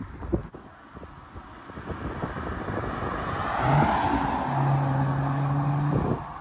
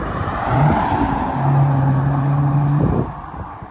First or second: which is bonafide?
first